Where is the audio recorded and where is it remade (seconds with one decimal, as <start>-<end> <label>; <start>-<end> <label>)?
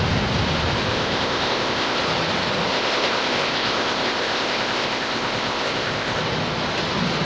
0.0-0.9 recorded; 0.9-2.0 remade; 2.0-2.7 recorded; 2.7-6.2 remade; 6.2-7.2 recorded